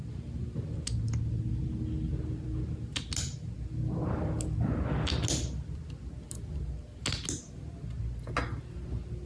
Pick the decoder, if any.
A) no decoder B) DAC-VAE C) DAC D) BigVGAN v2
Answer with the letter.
A